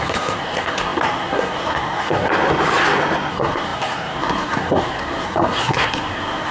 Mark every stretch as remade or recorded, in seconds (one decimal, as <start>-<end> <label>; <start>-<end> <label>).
0.0-2.3 remade; 2.3-3.3 recorded; 3.3-6.5 remade